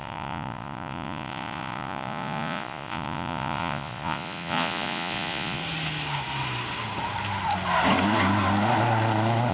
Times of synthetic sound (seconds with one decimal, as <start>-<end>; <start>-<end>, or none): 0.0-5.6